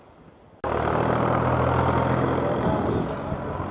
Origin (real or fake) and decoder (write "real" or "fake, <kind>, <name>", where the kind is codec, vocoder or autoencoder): real